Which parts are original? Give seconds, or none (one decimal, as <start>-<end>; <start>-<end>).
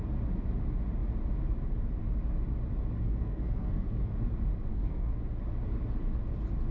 0.0-3.0; 4.1-4.7; 5.4-6.7